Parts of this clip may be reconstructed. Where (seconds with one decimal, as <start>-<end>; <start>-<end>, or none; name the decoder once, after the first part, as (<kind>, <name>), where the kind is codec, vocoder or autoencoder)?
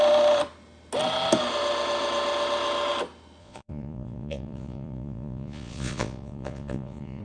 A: 3.4-7.2 (vocoder, Vocos)